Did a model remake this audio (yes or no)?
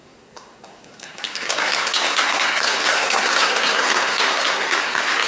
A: yes